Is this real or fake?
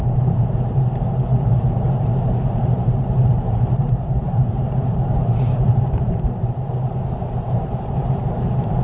fake